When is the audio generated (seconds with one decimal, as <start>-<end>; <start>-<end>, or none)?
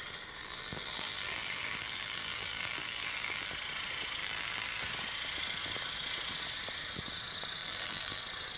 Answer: 0.4-3.5; 4.2-4.8; 7.6-8.2